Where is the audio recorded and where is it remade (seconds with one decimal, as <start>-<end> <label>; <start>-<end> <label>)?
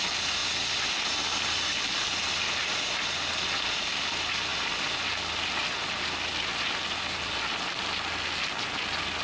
0.0-9.2 recorded